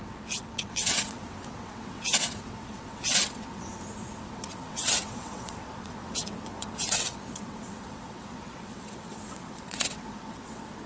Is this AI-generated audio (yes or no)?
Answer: yes